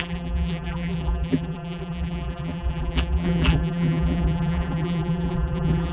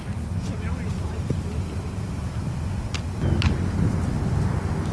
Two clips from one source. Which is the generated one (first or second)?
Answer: first